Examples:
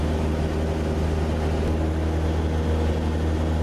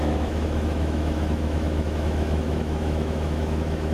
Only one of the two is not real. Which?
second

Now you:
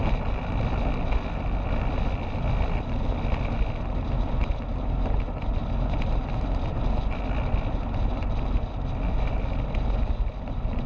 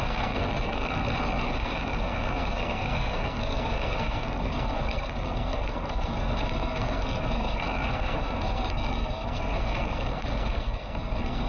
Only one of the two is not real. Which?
second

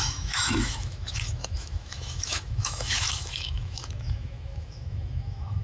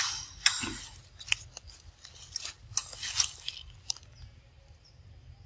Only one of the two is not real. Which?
first